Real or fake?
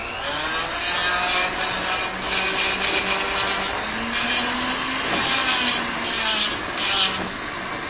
real